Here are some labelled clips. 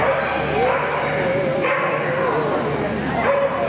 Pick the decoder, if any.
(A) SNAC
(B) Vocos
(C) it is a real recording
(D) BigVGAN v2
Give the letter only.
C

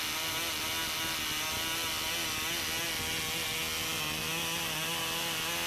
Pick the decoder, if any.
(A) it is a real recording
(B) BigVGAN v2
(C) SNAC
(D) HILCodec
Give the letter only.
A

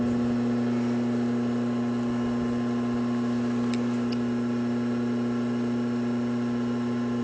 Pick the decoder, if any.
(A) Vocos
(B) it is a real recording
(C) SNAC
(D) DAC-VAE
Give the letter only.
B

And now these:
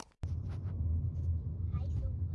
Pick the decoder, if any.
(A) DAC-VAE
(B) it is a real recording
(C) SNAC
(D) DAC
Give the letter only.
B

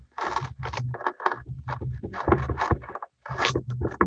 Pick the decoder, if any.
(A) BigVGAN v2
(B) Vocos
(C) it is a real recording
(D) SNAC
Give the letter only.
C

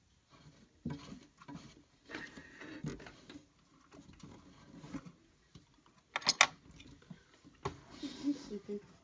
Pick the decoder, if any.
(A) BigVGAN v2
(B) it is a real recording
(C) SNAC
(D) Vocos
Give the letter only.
B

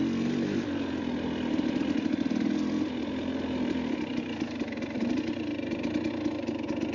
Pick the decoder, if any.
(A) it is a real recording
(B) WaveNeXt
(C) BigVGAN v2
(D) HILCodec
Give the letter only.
A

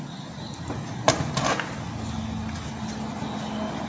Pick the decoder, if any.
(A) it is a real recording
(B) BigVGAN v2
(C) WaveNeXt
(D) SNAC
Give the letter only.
A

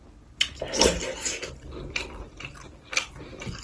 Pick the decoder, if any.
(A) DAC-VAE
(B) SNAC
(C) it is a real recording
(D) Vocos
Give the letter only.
C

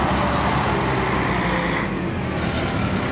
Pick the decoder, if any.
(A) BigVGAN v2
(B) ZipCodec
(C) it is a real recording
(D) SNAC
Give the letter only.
C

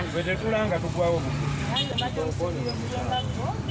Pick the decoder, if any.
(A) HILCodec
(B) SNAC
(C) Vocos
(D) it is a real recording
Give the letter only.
D